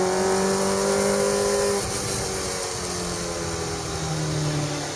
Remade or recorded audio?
recorded